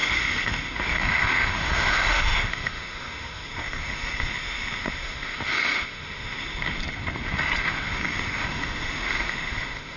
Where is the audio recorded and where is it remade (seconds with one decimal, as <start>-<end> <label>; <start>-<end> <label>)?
0.0-6.8 remade; 6.8-7.6 recorded; 7.6-10.0 remade